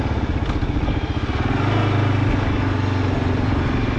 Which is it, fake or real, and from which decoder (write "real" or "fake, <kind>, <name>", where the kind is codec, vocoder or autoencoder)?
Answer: real